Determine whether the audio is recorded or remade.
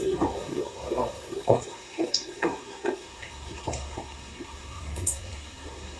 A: remade